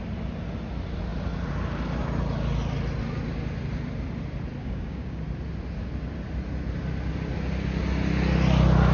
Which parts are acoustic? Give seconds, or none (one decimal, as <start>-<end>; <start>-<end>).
0.0-4.6; 5.2-8.9